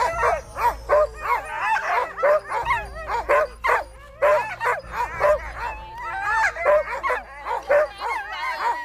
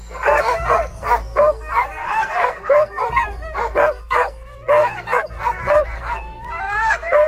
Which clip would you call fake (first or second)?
second